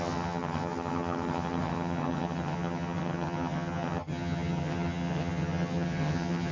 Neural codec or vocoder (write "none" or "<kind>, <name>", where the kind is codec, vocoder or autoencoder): vocoder, HiFi-GAN